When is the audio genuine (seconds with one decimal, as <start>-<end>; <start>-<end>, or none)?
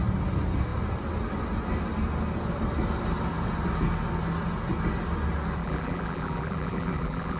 0.0-5.6